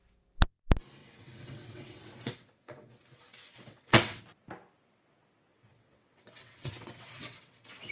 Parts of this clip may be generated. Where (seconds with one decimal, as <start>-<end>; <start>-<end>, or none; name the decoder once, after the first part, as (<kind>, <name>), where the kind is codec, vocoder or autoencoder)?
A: 1.0-4.2 (vocoder, WaveNeXt); 5.5-7.9